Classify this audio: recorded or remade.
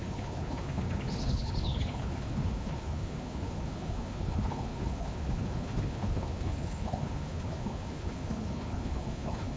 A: remade